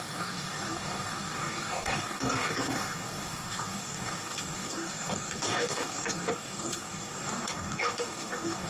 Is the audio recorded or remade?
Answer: remade